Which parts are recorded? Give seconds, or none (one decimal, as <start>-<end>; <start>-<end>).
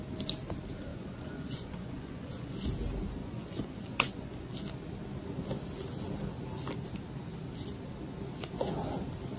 0.0-0.9; 2.7-3.2; 4.5-9.4